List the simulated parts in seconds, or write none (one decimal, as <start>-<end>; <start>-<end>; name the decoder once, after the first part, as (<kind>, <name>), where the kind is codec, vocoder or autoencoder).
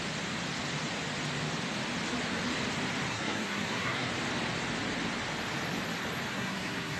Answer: 3.1-4.1 (codec, SNAC); 6.3-7.0